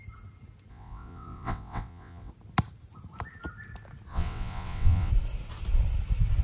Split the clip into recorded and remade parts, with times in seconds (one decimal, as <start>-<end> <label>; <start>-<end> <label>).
0.0-0.7 recorded; 0.7-2.3 remade; 2.3-4.1 recorded; 4.1-5.1 remade; 5.1-6.4 recorded